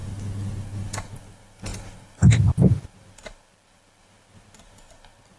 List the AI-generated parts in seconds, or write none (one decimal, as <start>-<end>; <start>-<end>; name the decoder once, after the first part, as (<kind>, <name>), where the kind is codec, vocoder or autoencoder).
none